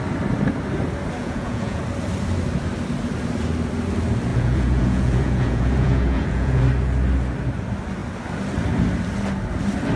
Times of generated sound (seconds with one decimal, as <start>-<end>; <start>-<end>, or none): 1.2-1.8; 4.3-6.6

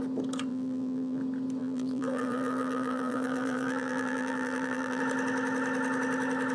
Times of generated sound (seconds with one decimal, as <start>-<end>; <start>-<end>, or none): 0.5-1.2; 1.6-5.0

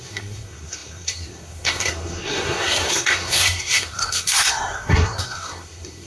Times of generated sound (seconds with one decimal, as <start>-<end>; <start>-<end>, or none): 0.0-6.1

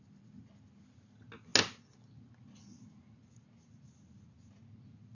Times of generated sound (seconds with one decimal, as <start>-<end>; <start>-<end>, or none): none